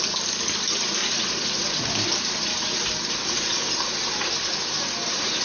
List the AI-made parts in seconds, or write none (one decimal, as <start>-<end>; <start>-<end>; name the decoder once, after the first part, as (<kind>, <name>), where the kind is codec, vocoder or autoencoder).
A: 1.0-4.2 (vocoder, BigVGAN v2)